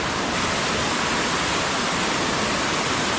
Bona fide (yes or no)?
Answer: yes